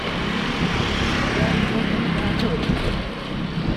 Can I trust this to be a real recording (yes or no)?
no